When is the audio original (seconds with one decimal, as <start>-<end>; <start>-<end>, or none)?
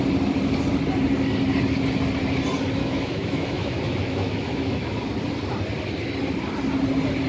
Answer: 0.0-2.8; 5.1-7.3